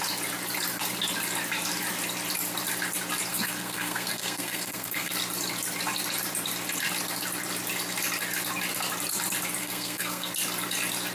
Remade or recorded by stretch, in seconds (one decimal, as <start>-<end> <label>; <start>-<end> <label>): 0.0-3.3 recorded; 3.3-5.1 remade; 5.1-9.6 recorded; 9.6-10.3 remade; 10.3-11.1 recorded